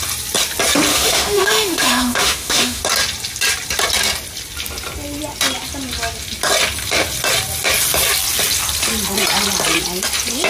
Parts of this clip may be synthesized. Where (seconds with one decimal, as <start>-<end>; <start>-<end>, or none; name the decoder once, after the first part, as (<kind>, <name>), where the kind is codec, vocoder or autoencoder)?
0.9-2.8 (autoencoder, DAC-VAE)